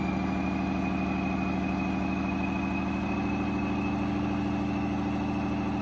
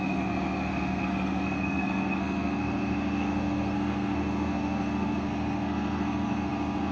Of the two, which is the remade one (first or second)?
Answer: second